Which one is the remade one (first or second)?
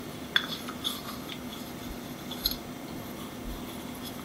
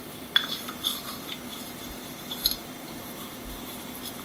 second